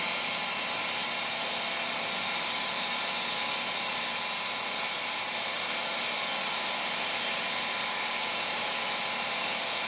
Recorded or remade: recorded